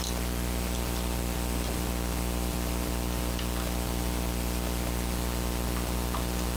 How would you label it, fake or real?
real